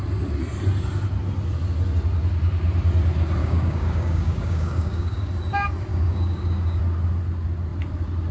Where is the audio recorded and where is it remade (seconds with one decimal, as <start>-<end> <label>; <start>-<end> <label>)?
0.0-3.4 recorded; 3.4-5.3 remade; 5.3-5.9 recorded; 5.9-6.8 remade; 6.8-8.3 recorded